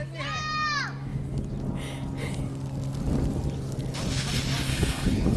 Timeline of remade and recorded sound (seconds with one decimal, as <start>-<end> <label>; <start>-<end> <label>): 0.0-4.7 recorded; 4.7-5.4 remade

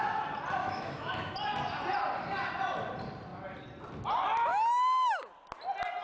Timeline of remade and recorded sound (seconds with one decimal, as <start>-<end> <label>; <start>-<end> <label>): 0.0-0.6 recorded; 0.6-1.3 remade; 1.3-4.5 recorded; 4.5-5.3 remade; 5.3-6.0 recorded

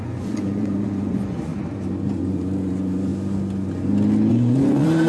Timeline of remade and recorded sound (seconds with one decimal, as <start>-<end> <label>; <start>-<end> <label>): 0.0-1.5 remade; 1.5-2.3 recorded; 2.3-3.1 remade; 3.1-4.3 recorded; 4.3-5.1 remade

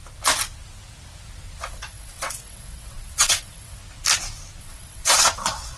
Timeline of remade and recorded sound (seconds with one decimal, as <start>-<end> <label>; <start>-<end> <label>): 0.0-1.6 recorded; 1.6-3.8 remade; 3.8-4.6 recorded; 4.6-5.8 remade

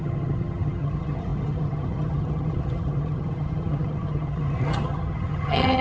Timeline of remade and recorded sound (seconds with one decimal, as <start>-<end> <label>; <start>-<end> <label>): 0.0-5.8 remade